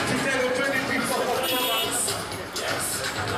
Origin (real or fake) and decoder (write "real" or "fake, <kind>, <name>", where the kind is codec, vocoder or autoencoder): real